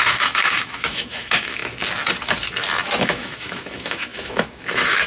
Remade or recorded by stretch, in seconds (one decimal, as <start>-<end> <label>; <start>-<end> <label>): 0.0-1.6 remade; 1.6-3.0 recorded; 3.0-5.1 remade

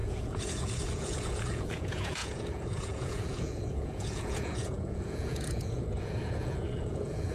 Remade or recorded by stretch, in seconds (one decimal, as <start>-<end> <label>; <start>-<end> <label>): 0.0-7.3 remade

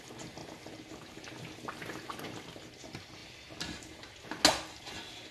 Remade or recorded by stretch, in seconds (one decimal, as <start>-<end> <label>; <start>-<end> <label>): 0.0-5.3 recorded

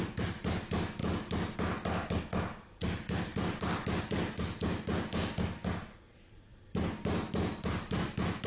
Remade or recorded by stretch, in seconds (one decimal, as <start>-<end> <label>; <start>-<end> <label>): 0.0-6.5 recorded; 6.5-8.1 remade; 8.1-8.5 recorded

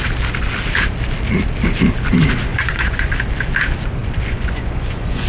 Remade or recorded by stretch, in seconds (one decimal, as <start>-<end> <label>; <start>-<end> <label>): 0.0-2.5 recorded; 2.5-3.1 remade; 3.1-4.0 recorded; 4.0-5.3 remade

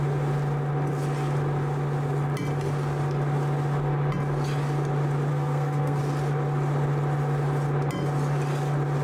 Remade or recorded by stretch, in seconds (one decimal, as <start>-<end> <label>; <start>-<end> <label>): 0.0-5.3 recorded; 5.3-6.0 remade; 6.0-9.0 recorded